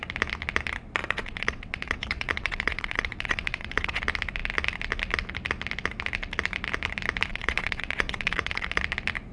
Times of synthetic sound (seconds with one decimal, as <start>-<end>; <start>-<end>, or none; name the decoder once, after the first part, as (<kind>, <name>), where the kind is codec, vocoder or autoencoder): 1.0-4.0 (vocoder, WaveNeXt); 7.3-8.8